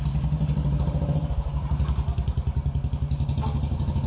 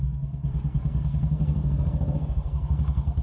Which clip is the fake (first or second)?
second